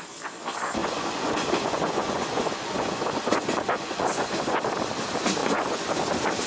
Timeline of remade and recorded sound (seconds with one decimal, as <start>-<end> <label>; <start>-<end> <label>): 0.0-0.8 recorded; 0.8-4.7 remade; 4.7-5.4 recorded; 5.4-5.9 remade; 5.9-6.5 recorded